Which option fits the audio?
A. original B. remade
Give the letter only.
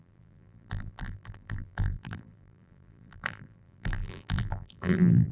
B